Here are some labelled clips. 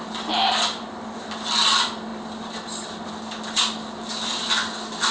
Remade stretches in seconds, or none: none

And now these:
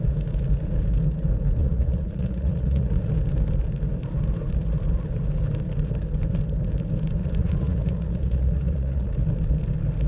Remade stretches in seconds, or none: 1.6-3.1 (vocoder, Vocos); 7.2-9.2

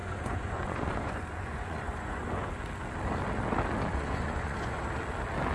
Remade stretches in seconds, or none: 0.0-2.5 (vocoder, Vocos); 3.9-4.8

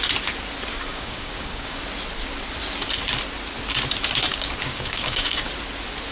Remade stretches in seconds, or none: 0.9-1.8 (codec, DAC); 4.3-5.5